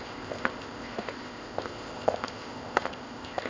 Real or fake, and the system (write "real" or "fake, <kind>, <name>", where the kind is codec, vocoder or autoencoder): fake, codec, ZipCodec